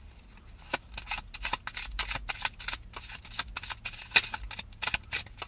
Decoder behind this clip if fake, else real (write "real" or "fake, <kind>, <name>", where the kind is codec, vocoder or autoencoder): real